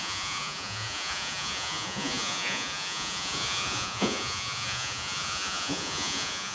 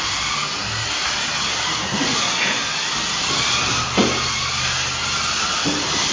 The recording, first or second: second